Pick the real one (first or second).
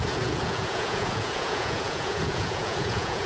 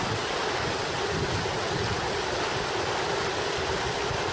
second